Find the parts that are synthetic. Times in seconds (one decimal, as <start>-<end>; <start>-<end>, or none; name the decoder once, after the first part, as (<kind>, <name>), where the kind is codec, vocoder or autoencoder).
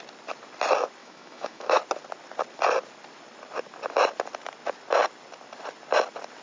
1.0-1.8 (autoencoder, DAC-VAE)